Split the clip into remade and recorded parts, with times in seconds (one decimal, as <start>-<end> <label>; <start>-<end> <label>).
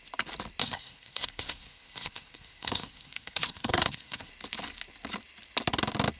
0.0-0.6 recorded; 0.6-4.3 remade; 4.3-6.2 recorded